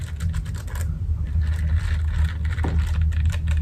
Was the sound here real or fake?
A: real